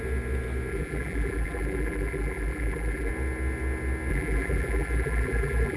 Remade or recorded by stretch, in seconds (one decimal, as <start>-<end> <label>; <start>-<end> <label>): 0.0-0.7 recorded; 0.7-3.1 remade; 3.1-4.1 recorded; 4.1-5.8 remade